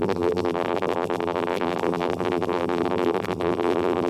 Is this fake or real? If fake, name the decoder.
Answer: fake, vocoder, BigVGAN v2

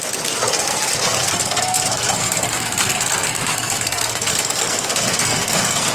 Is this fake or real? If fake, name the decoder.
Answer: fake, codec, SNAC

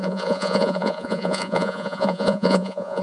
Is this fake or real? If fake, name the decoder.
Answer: fake, vocoder, Vocos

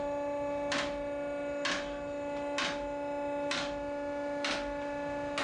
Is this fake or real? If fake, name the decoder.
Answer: real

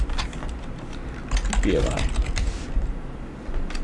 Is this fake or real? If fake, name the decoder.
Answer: real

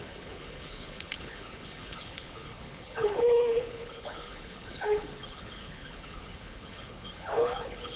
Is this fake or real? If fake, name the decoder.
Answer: fake, codec, HILCodec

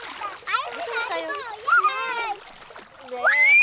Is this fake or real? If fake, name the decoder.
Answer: real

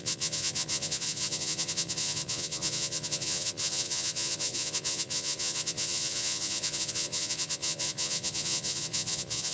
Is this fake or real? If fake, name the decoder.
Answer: fake, vocoder, Vocos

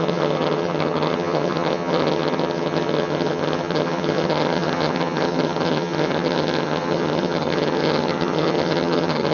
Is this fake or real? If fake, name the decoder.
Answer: fake, vocoder, HiFi-GAN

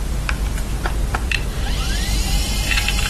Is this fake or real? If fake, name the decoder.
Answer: real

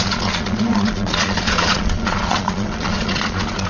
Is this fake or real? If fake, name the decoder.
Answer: fake, vocoder, Vocos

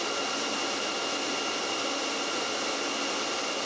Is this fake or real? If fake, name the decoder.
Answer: real